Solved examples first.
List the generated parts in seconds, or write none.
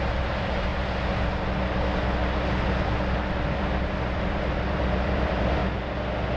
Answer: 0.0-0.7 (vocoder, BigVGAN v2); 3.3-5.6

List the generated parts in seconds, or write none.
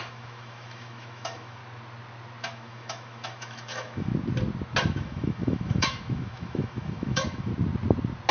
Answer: 0.0-1.6 (autoencoder, DAC-VAE); 2.4-4.1; 4.9-7.5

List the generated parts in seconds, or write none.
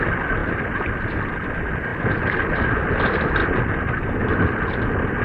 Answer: 0.0-3.4 (vocoder, BigVGAN v2)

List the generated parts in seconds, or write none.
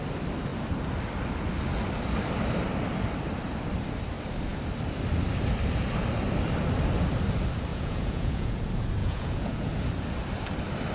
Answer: 7.7-8.6 (vocoder, Vocos); 9.0-9.7